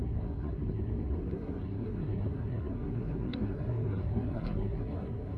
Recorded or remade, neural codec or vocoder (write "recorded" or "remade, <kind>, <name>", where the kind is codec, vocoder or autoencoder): remade, codec, SNAC